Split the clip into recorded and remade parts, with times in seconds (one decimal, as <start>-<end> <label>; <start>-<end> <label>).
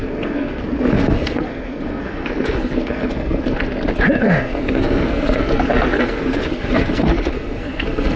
0.0-3.6 remade; 3.6-4.2 recorded; 4.2-8.2 remade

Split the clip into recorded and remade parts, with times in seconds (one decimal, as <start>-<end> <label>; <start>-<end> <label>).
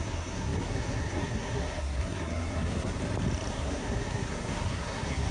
0.0-3.0 remade; 3.0-3.5 recorded; 3.5-5.3 remade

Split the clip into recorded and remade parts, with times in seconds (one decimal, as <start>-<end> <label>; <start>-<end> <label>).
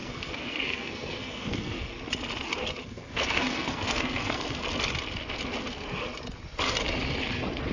0.0-1.9 remade; 1.9-2.8 recorded; 2.8-4.6 remade; 4.6-7.7 recorded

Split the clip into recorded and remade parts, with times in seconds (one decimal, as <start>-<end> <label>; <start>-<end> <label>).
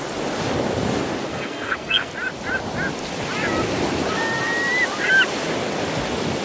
0.0-1.3 recorded; 1.3-2.1 remade; 2.1-6.4 recorded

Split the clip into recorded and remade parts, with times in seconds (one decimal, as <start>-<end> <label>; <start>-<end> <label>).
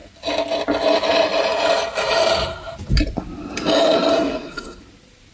0.0-4.1 recorded; 4.1-4.8 remade; 4.8-5.3 recorded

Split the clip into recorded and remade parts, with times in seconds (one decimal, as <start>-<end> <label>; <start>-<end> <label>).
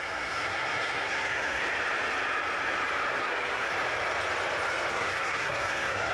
0.0-1.6 remade; 1.6-3.2 recorded; 3.2-3.7 remade; 3.7-4.9 recorded; 4.9-6.1 remade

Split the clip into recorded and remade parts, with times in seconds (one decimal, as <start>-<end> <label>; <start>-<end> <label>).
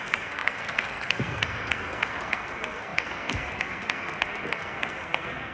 0.0-5.5 remade